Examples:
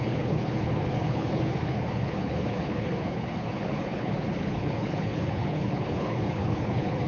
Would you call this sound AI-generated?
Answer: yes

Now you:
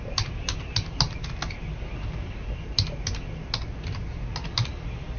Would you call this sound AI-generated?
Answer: no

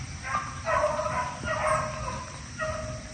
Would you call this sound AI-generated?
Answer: no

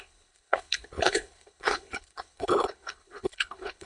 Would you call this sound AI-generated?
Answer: yes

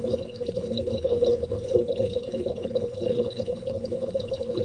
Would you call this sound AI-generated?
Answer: yes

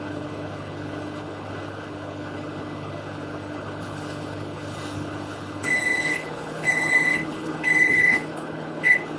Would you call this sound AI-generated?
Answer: yes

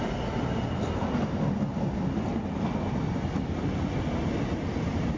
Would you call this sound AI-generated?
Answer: no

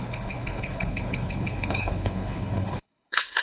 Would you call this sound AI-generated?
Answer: yes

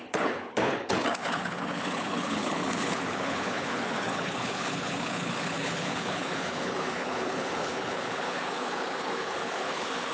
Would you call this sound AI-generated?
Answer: yes